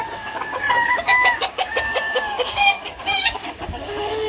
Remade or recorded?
remade